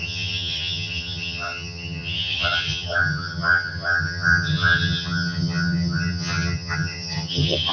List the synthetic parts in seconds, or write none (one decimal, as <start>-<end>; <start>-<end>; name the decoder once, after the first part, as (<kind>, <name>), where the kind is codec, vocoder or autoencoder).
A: 0.0-7.7 (vocoder, HiFi-GAN)